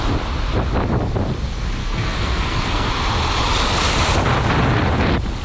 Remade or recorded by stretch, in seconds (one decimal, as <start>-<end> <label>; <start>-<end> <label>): 0.0-1.8 recorded; 1.8-2.9 remade; 2.9-5.4 recorded